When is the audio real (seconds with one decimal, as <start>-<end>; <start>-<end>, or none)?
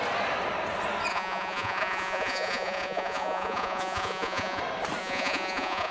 0.0-1.1; 4.6-5.0